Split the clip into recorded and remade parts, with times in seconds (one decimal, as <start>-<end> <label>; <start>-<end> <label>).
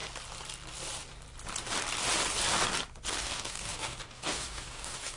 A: 0.0-3.1 recorded; 3.1-5.2 remade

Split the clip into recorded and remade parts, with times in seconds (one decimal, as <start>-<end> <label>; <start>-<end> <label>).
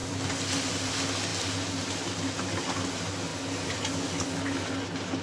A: 0.0-5.2 recorded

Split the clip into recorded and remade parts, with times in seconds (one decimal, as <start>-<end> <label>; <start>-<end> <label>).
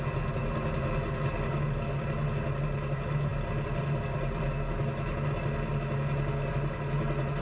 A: 0.0-7.4 recorded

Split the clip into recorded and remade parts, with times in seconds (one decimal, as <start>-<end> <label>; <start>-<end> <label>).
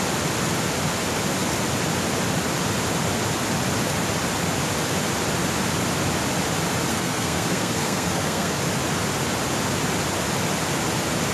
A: 0.0-6.9 recorded; 6.9-8.6 remade; 8.6-11.3 recorded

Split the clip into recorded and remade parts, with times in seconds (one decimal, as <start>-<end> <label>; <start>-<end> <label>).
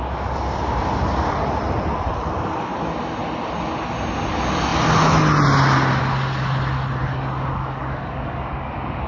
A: 0.0-7.0 recorded; 7.0-9.1 remade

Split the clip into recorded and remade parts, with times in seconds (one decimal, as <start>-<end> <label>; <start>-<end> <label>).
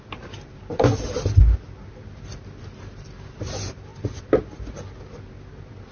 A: 0.0-5.9 recorded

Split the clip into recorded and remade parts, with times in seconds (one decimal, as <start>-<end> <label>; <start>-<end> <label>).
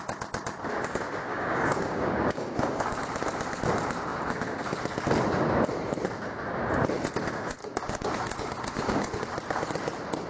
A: 0.0-1.3 recorded; 1.3-3.0 remade; 3.0-7.6 recorded; 7.6-9.2 remade; 9.2-10.3 recorded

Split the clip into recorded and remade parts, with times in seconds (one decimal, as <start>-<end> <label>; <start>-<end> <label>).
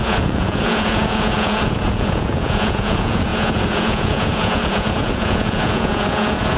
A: 0.0-6.6 remade